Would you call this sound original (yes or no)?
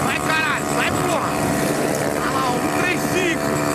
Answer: no